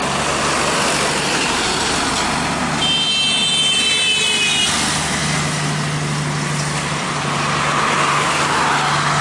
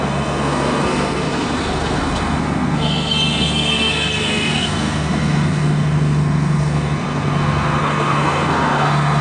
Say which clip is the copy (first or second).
second